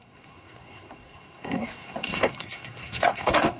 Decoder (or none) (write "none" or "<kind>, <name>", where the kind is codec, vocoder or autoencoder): codec, SNAC